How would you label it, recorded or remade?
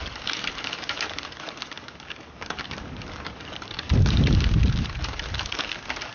remade